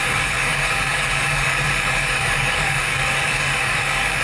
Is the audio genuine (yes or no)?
no